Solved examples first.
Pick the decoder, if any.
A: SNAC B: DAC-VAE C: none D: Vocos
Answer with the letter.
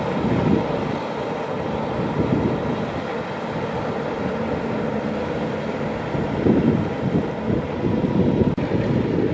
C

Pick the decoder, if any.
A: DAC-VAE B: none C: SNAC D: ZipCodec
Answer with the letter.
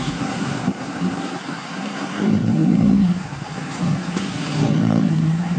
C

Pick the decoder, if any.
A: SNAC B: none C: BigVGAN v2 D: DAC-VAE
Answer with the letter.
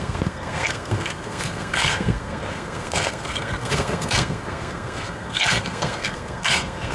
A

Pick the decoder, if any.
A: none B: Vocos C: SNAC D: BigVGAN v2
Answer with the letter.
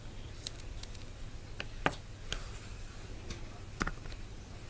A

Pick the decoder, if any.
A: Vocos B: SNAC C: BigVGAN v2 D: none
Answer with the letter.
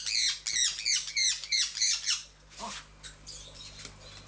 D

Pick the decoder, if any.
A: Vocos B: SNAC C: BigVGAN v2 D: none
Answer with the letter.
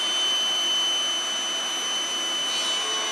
D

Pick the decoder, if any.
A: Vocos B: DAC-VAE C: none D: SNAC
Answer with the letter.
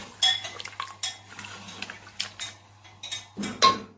C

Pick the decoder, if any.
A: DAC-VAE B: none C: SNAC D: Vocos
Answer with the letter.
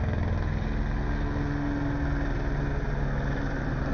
B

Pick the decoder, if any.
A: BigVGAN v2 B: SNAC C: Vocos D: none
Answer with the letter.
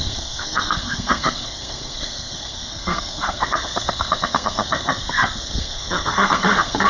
B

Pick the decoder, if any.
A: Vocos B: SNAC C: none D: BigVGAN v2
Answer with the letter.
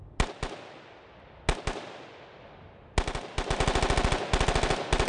C